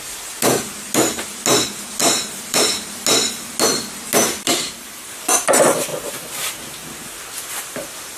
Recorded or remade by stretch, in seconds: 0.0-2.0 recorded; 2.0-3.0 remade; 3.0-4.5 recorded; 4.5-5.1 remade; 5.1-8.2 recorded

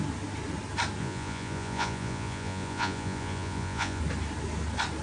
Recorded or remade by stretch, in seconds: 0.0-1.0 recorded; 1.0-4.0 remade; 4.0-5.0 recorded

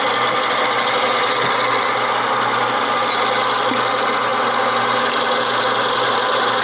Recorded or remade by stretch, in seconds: 0.0-6.6 recorded